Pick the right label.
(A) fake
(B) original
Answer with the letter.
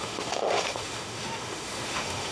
A